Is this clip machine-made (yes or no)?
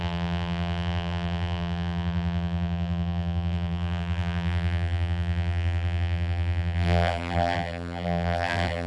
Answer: yes